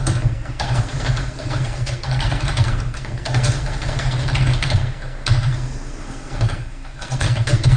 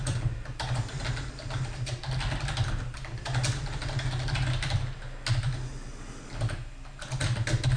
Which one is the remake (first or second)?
first